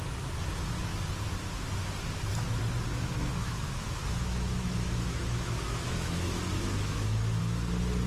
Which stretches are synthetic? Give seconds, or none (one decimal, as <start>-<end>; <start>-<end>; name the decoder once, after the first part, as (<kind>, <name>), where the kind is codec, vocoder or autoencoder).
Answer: 2.9-7.4 (autoencoder, DAC-VAE)